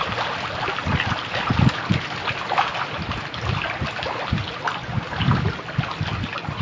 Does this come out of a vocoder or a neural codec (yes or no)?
no